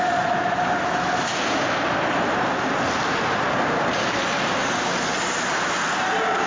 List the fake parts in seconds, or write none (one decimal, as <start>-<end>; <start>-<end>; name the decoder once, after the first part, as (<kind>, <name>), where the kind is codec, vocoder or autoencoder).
none